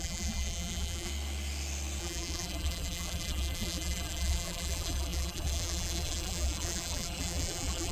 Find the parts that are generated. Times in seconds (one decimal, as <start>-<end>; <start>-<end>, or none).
0.0-1.1; 2.0-7.9